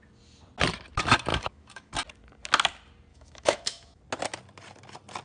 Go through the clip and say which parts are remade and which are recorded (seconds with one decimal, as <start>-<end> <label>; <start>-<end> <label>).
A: 0.0-1.3 recorded; 1.3-1.9 remade; 1.9-3.1 recorded; 3.1-4.0 remade; 4.0-5.2 recorded